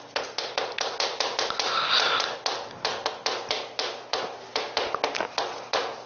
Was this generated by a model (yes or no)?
no